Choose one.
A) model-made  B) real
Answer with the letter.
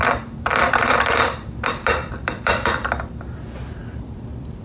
A